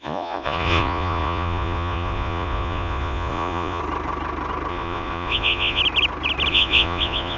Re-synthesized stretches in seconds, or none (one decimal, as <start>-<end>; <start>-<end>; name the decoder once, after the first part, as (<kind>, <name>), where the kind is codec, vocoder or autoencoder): 0.0-3.8 (vocoder, Vocos); 4.7-5.8; 6.5-7.4